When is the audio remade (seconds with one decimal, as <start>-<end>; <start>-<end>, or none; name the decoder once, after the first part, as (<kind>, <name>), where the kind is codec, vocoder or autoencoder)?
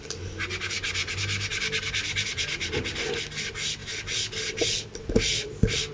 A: none